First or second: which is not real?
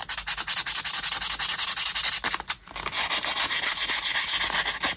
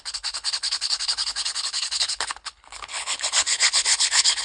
second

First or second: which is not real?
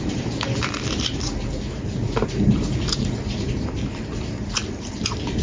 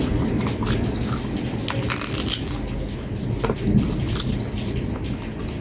first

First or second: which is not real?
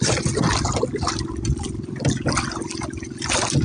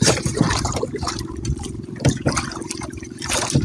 second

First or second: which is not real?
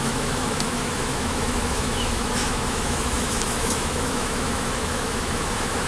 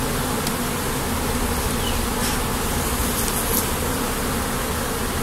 first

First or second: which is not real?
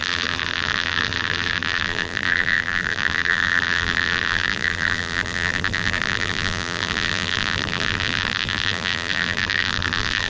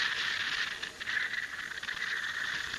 first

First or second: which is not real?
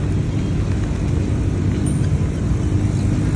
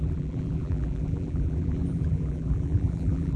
second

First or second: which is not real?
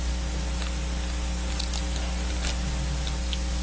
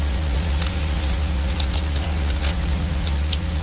second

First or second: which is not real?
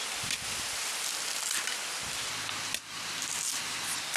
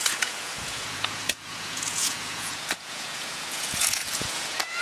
second